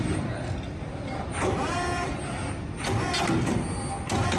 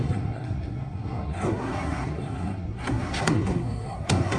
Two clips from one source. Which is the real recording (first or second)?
first